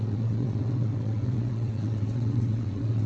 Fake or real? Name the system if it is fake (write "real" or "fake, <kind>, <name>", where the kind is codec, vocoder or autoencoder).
fake, vocoder, WaveNeXt